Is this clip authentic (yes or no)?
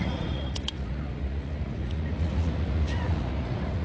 no